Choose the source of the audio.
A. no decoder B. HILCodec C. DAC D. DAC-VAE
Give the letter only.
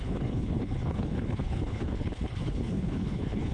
B